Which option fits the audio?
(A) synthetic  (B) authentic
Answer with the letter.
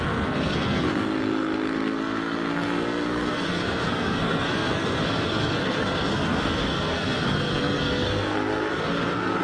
A